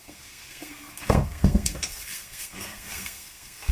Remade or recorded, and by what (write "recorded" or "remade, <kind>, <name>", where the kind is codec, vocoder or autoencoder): remade, codec, SNAC